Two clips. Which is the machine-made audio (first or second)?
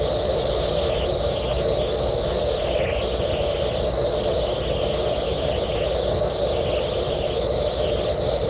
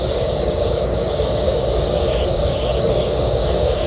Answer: second